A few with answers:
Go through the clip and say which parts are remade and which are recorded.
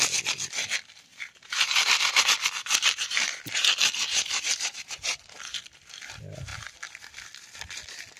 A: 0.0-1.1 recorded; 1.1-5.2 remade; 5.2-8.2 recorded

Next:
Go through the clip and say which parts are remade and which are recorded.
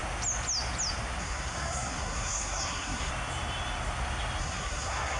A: 0.0-1.2 recorded; 1.2-3.1 remade; 3.1-4.4 recorded; 4.4-5.2 remade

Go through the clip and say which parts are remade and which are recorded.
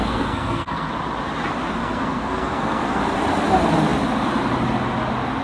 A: 0.0-0.9 remade; 0.9-1.8 recorded; 1.8-3.0 remade; 3.0-5.4 recorded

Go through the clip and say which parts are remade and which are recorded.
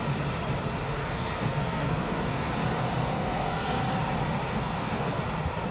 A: 0.0-1.0 recorded; 1.0-2.5 remade; 2.5-3.0 recorded; 3.0-3.8 remade; 3.8-4.5 recorded; 4.5-5.2 remade; 5.2-5.7 recorded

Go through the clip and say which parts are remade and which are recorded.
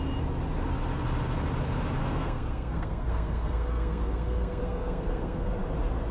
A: 0.0-2.0 recorded; 2.0-5.5 remade; 5.5-6.1 recorded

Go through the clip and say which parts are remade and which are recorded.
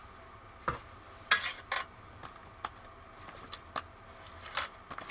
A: 0.0-5.1 recorded